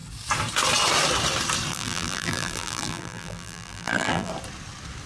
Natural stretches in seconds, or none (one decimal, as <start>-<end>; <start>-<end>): 0.0-1.7; 4.3-5.1